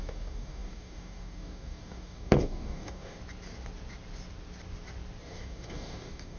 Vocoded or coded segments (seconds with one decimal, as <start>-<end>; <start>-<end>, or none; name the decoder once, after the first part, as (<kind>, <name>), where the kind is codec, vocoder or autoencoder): 0.0-3.2 (codec, DAC); 5.2-6.4